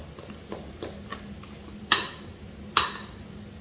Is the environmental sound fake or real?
real